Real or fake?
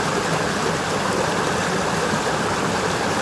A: real